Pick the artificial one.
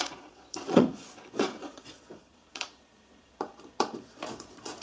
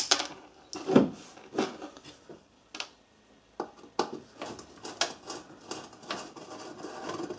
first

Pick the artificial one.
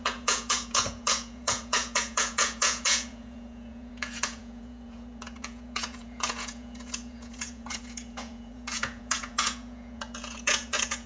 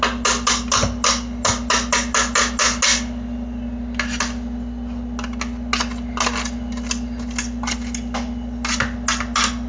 first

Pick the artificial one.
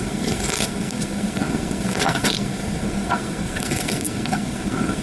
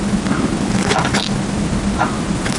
first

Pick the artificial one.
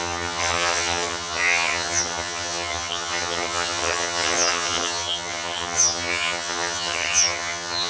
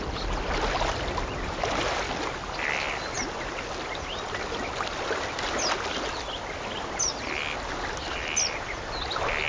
first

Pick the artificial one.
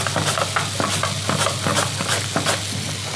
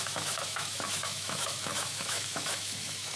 second